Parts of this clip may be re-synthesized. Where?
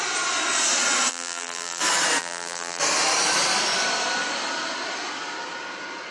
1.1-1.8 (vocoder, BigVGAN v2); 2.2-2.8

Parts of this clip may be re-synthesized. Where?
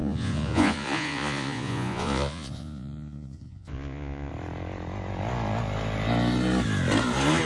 0.0-4.3 (vocoder, Vocos)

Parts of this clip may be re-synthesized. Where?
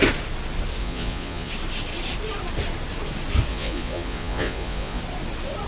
0.8-1.5 (vocoder, Vocos); 3.5-5.0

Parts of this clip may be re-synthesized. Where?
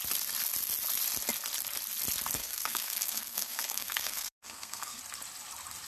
2.4-5.0 (codec, SNAC)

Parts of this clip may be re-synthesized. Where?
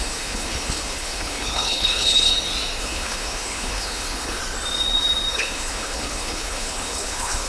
0.0-2.3 (codec, HILCodec); 2.8-4.4; 5.3-7.5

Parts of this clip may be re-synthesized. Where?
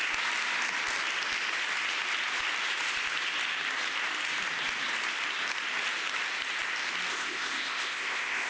7.1-8.5 (codec, ZipCodec)